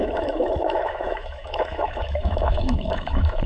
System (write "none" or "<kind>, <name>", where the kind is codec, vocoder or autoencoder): autoencoder, DAC-VAE